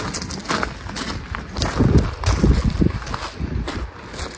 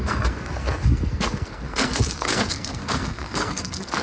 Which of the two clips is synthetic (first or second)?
second